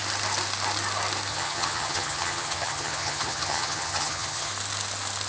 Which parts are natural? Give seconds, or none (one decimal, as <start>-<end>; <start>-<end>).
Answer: 0.0-1.3; 4.5-5.3